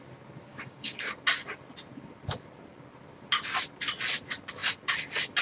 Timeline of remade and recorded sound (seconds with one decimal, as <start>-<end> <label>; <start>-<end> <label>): 0.0-0.5 recorded; 0.5-1.1 remade; 1.1-5.4 recorded